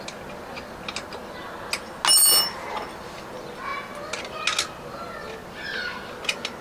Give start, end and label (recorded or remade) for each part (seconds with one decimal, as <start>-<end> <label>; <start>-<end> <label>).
0.0-6.6 recorded